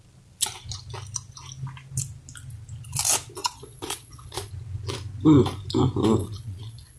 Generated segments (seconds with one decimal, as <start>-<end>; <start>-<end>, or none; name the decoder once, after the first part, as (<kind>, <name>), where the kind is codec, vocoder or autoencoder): 3.4-4.5 (vocoder, Vocos); 6.2-7.0